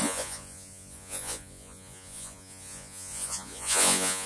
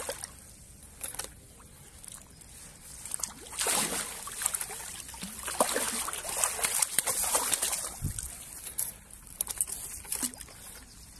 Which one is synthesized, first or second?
first